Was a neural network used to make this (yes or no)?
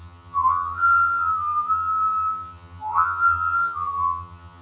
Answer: yes